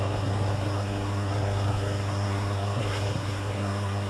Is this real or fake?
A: fake